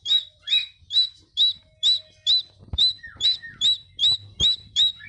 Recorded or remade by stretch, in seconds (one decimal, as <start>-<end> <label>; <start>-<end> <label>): 0.0-5.1 recorded